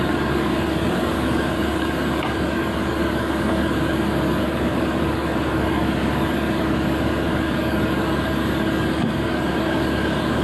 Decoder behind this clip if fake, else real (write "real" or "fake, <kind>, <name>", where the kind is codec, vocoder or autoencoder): fake, codec, DAC